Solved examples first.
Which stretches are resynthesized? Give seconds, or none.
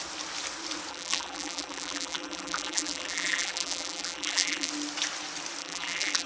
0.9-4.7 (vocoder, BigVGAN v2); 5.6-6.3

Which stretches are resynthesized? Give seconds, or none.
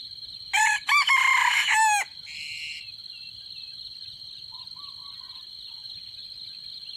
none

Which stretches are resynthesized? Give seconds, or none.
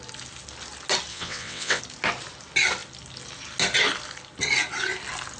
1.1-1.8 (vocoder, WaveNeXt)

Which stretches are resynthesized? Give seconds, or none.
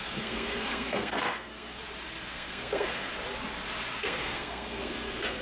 0.0-1.8 (codec, SNAC); 2.3-3.1; 4.0-5.4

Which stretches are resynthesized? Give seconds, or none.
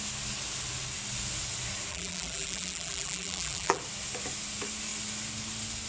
1.9-3.8 (vocoder, BigVGAN v2)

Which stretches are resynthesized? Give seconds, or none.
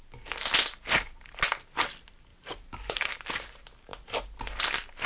2.3-3.1 (vocoder, BigVGAN v2)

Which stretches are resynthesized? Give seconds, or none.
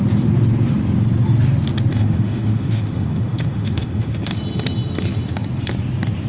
1.9-4.3 (autoencoder, DAC-VAE)